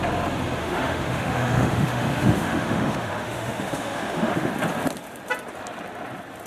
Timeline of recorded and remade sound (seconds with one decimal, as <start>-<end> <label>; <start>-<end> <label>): 0.0-0.6 recorded; 0.6-4.5 remade; 4.5-6.5 recorded